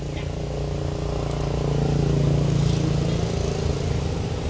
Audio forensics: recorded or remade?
recorded